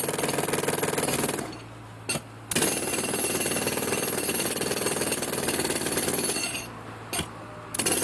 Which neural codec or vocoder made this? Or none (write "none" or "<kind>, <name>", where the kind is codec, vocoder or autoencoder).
none